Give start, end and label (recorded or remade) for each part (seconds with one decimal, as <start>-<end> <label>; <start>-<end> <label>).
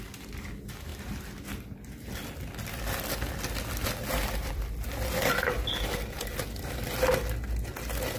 0.0-4.4 recorded; 4.4-6.9 remade; 6.9-8.2 recorded